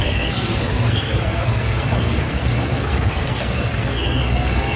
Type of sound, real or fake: fake